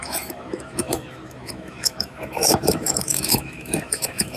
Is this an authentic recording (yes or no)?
no